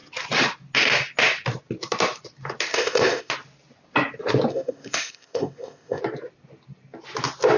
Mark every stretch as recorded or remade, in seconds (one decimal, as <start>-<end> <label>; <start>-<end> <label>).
0.0-2.7 recorded; 2.7-3.3 remade; 3.3-4.5 recorded; 4.5-6.0 remade; 6.0-7.6 recorded